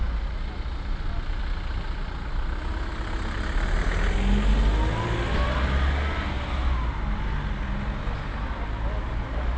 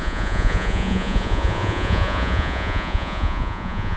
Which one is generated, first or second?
second